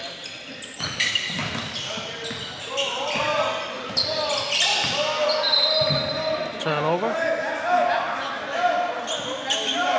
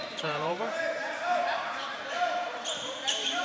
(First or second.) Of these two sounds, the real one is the first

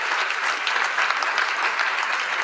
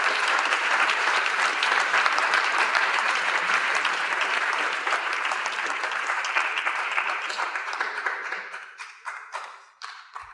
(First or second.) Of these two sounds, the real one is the first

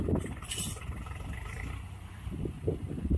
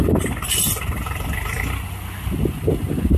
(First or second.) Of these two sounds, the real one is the second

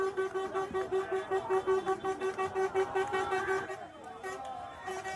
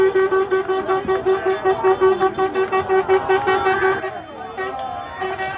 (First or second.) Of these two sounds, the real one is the second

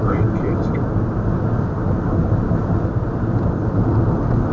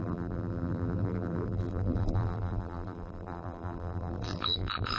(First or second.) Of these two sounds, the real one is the first